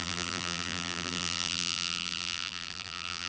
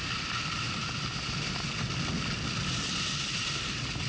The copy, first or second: first